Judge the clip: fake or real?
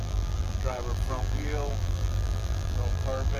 fake